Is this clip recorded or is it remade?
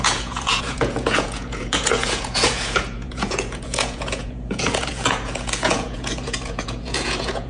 remade